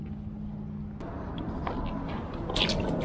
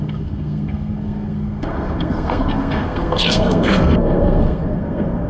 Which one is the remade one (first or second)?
second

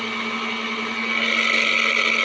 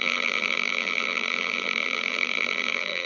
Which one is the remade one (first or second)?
second